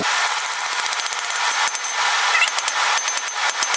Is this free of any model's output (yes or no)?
yes